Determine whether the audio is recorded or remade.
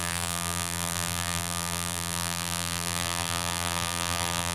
remade